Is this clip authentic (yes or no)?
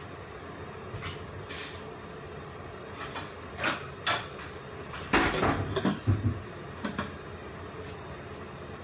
yes